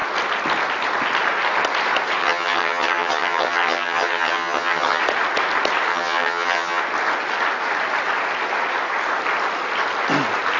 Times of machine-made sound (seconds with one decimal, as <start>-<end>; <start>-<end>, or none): 2.2-5.0; 5.9-6.8